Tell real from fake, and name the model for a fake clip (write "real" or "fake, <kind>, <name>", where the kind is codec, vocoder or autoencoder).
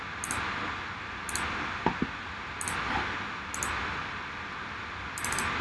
real